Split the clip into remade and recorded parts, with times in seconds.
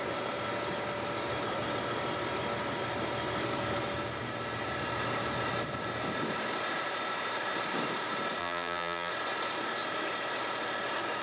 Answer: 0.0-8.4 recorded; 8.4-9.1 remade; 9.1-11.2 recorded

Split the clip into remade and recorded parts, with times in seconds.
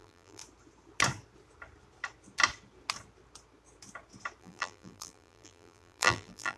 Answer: 0.0-0.4 remade; 0.4-4.4 recorded; 4.4-6.6 remade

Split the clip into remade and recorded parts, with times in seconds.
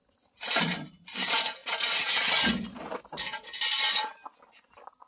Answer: 0.0-0.6 recorded; 0.6-1.6 remade; 1.6-5.1 recorded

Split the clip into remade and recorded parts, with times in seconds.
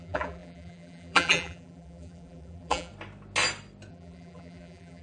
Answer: 0.0-2.9 remade; 2.9-3.9 recorded; 3.9-5.0 remade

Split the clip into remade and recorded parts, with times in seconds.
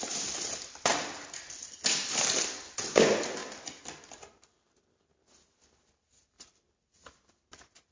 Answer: 0.0-0.9 remade; 0.9-2.0 recorded; 2.0-7.9 remade